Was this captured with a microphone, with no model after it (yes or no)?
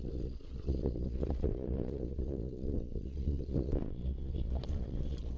no